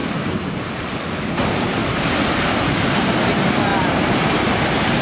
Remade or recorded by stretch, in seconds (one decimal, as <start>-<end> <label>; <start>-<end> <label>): 0.0-1.2 recorded; 1.2-5.0 remade